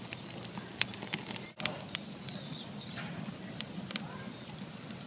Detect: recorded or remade recorded